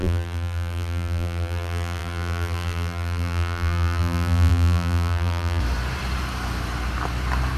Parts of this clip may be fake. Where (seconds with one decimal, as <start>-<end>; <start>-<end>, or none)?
0.0-5.6